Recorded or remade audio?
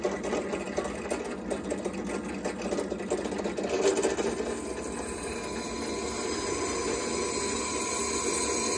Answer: recorded